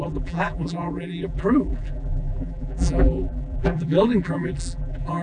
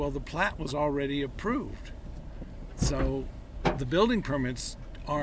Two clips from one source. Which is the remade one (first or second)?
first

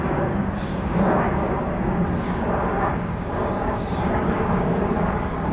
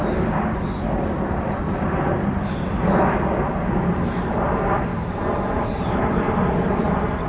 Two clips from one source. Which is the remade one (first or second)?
first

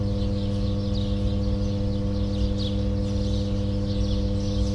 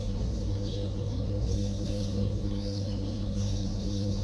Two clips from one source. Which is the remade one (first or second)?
second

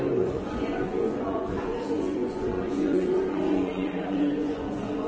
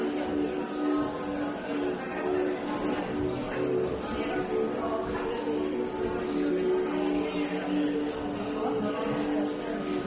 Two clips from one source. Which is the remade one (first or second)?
first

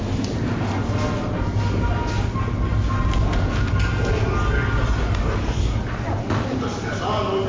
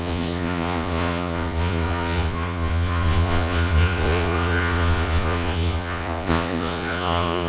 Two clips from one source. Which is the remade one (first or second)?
second